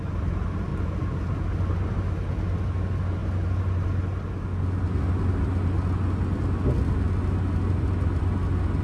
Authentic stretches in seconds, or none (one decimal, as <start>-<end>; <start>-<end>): 0.0-8.8